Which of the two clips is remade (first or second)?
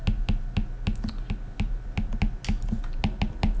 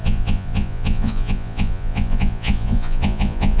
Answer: second